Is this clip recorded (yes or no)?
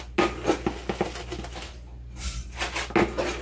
yes